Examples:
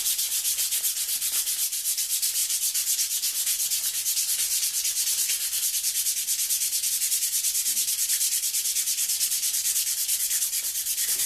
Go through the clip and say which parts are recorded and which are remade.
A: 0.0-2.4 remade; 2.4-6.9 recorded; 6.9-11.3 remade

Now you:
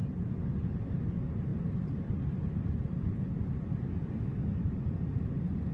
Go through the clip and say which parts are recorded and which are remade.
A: 0.0-1.5 recorded; 1.5-4.9 remade; 4.9-5.7 recorded

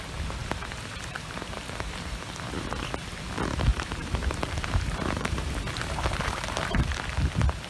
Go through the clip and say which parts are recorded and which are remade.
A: 0.0-0.4 recorded; 0.4-2.9 remade; 2.9-3.7 recorded; 3.7-6.8 remade; 6.8-7.7 recorded

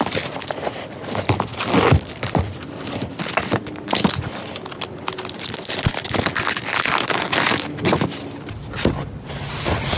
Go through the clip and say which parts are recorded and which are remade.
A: 0.0-1.5 recorded; 1.5-3.1 remade; 3.1-10.0 recorded